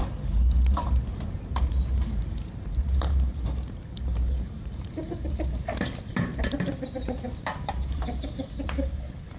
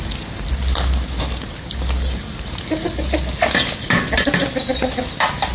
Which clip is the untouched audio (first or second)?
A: second